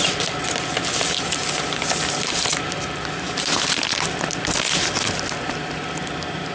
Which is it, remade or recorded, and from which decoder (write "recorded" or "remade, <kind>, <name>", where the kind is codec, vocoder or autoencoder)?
recorded